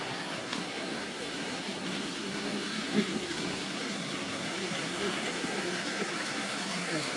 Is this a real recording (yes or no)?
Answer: no